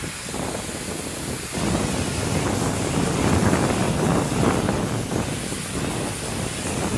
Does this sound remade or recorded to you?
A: recorded